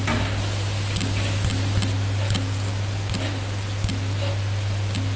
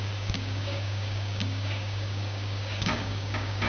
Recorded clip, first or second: first